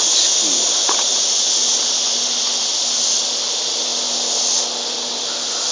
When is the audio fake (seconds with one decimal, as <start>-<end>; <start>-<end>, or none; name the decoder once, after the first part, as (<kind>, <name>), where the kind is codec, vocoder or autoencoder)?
0.8-1.6 (vocoder, Vocos)